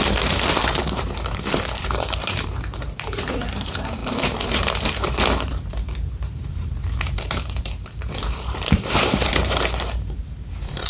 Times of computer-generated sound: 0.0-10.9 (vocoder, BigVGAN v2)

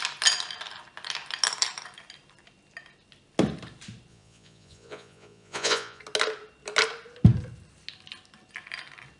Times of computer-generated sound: 4.1-6.0 (vocoder, Vocos)

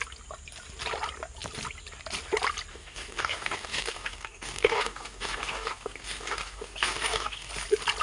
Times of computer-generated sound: 2.7-7.5 (codec, DAC)

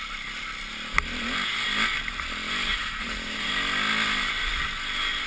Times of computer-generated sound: 2.7-3.5 (vocoder, Vocos)